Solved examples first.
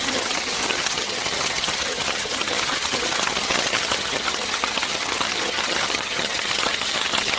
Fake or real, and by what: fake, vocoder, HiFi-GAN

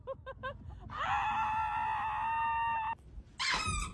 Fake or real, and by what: real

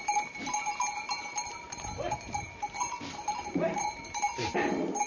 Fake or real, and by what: fake, vocoder, BigVGAN v2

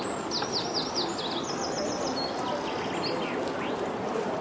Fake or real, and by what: real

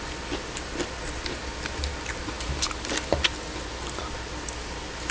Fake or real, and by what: real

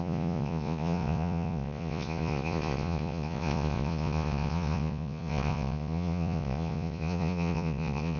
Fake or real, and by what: fake, vocoder, Vocos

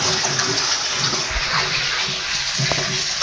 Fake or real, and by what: fake, vocoder, Vocos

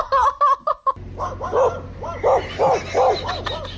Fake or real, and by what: real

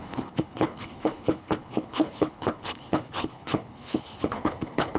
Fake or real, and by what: fake, codec, HILCodec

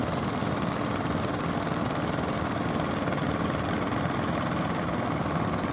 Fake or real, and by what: real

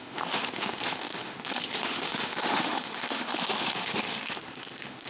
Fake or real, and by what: fake, autoencoder, DAC-VAE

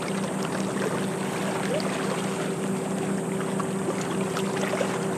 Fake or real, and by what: real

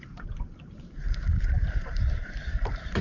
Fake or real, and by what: fake, vocoder, BigVGAN v2